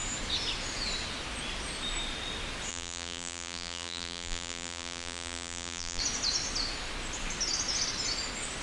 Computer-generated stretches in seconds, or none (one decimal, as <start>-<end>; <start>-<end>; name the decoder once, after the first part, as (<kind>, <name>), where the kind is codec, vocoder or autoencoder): 2.7-6.0 (vocoder, BigVGAN v2)